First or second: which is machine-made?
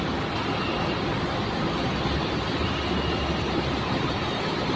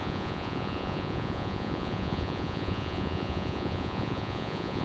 second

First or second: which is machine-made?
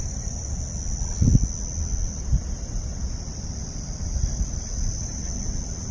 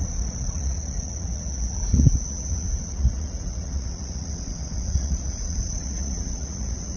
second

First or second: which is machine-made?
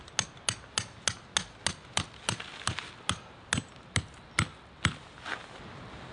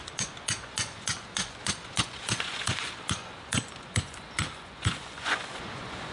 second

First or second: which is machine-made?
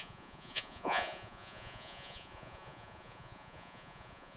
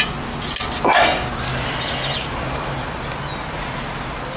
first